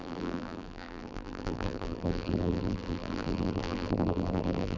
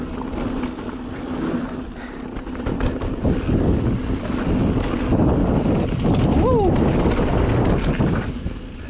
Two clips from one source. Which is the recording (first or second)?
second